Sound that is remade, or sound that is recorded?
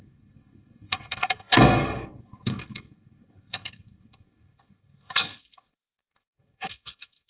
remade